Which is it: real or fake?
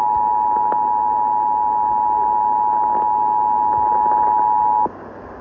real